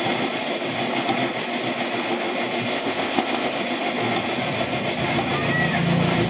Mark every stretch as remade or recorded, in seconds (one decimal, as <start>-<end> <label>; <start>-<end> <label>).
0.0-2.7 recorded; 2.7-3.6 remade; 3.6-6.3 recorded